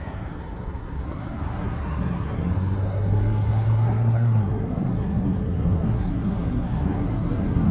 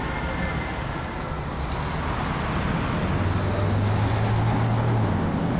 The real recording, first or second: second